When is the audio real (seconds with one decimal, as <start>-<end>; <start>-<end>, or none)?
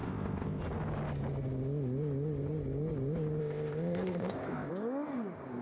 0.6-3.4; 4.7-5.6